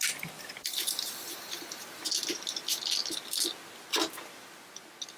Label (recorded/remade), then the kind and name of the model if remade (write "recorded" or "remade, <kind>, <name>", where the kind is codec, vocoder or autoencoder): recorded